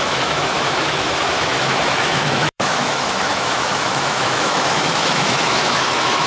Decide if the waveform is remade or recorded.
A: remade